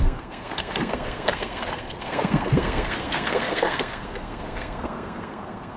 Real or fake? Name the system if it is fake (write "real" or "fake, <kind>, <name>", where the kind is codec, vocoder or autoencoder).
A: fake, codec, SNAC